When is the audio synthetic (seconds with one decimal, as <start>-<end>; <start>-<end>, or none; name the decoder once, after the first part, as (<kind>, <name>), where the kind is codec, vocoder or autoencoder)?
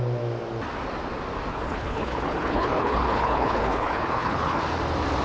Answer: 1.5-4.6 (codec, HILCodec)